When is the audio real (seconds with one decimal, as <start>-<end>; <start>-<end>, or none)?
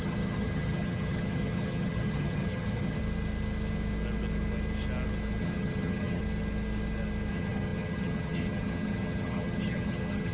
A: 3.0-5.4; 6.2-7.3